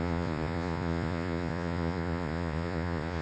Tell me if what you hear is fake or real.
fake